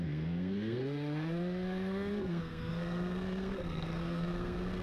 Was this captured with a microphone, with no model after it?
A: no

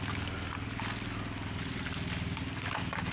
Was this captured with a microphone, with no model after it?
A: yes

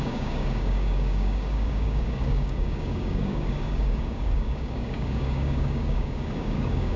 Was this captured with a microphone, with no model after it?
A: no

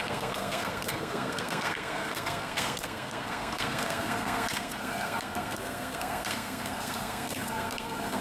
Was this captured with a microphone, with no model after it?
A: no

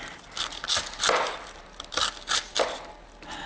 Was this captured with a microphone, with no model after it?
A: yes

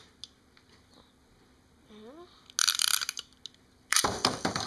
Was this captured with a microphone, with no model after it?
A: yes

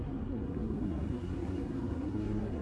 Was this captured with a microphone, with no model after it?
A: no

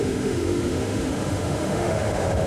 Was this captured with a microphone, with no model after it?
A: no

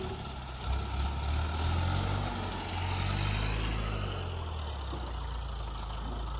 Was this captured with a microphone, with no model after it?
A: yes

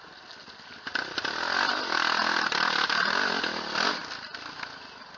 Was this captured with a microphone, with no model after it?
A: yes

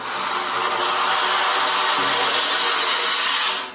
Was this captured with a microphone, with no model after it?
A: yes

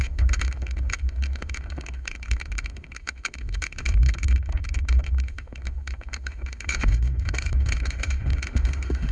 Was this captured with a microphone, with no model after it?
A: no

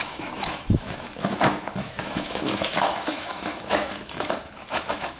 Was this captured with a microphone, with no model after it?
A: no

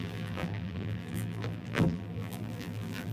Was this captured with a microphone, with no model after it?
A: no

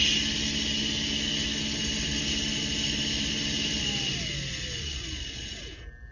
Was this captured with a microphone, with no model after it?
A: yes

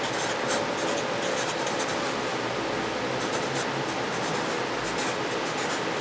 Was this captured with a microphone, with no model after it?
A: yes